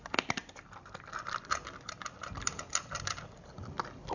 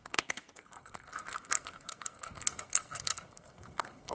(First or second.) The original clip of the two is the first